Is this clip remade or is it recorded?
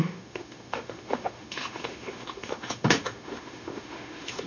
remade